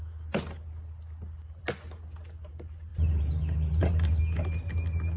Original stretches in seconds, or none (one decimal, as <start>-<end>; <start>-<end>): 0.0-2.9; 4.2-5.2